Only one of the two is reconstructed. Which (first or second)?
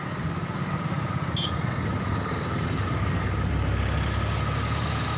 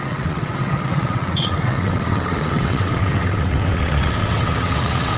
second